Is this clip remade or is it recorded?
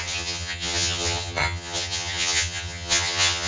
remade